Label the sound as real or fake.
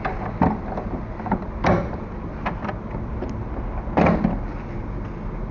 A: real